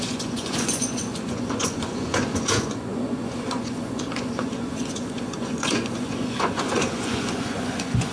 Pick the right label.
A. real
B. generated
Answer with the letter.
B